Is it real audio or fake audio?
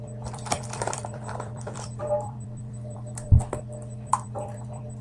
fake